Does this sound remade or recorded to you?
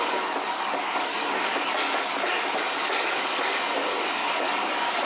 remade